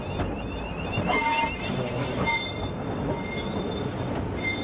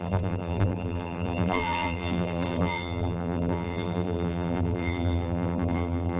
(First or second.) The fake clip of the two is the second